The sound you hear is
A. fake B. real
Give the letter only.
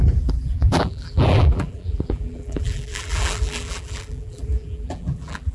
A